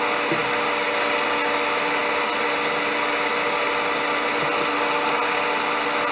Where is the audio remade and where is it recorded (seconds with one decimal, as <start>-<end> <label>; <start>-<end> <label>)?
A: 0.0-6.1 recorded